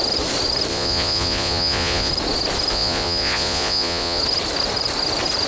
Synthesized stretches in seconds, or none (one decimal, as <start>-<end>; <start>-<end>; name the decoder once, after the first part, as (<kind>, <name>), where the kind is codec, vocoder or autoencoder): 0.7-2.1 (vocoder, Vocos); 2.7-4.2